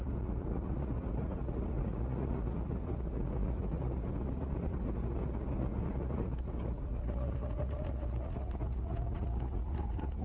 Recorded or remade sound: remade